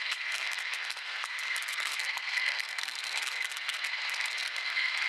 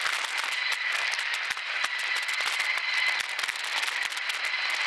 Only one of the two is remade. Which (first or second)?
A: first